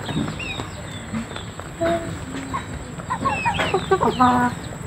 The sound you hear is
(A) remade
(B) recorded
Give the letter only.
B